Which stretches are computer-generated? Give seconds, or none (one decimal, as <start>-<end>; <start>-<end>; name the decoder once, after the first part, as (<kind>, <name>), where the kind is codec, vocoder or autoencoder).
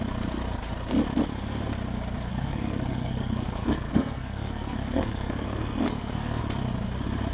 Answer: 2.3-6.4 (codec, SNAC)